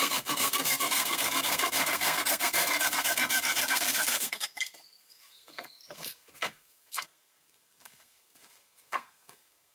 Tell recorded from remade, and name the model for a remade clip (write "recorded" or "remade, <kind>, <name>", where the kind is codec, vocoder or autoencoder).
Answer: remade, codec, SNAC